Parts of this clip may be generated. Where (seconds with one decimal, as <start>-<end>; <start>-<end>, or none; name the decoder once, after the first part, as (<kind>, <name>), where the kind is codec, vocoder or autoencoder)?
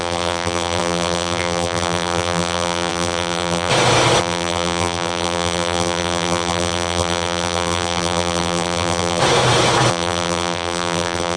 0.0-3.7 (vocoder, BigVGAN v2); 4.2-9.2; 9.9-11.4